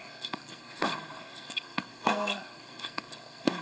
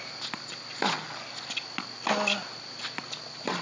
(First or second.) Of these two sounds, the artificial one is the first